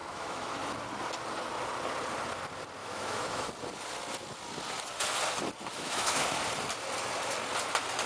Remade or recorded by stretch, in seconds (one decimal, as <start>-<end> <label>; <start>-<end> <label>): 0.0-0.6 remade; 0.6-2.8 recorded; 2.8-3.5 remade; 3.5-5.7 recorded; 5.7-6.2 remade; 6.2-8.1 recorded